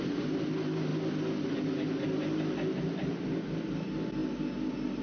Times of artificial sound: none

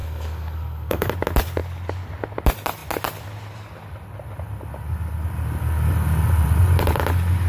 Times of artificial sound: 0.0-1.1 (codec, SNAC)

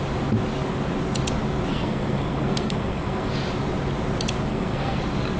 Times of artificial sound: 1.7-3.3 (codec, SNAC); 4.5-5.0